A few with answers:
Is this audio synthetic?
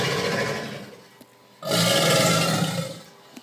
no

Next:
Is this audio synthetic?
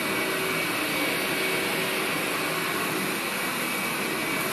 no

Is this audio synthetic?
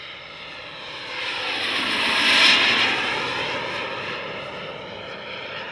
no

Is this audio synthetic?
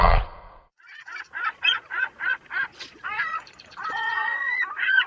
yes